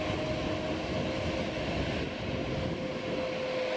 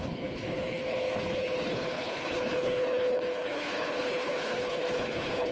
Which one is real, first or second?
first